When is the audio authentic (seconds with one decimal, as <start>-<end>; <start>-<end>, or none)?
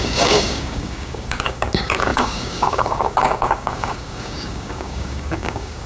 none